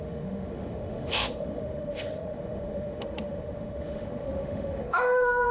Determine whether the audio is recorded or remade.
remade